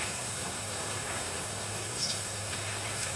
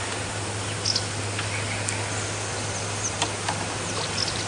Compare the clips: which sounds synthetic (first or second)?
first